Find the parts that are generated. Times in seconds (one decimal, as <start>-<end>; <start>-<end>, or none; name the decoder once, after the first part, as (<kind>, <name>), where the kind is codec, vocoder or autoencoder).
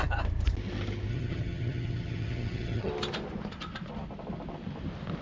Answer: 1.1-2.9 (vocoder, HiFi-GAN)